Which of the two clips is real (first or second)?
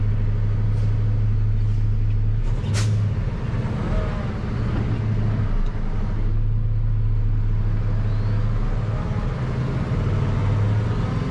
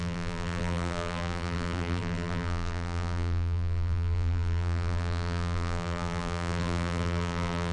first